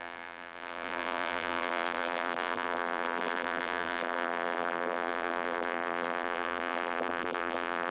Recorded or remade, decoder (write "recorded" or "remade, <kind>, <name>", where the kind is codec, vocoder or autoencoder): remade, vocoder, BigVGAN v2